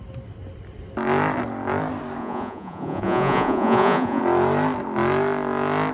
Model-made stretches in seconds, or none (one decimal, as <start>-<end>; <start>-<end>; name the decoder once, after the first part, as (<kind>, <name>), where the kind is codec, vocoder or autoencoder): 2.2-4.2 (vocoder, Vocos)